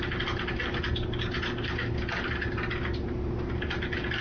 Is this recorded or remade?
recorded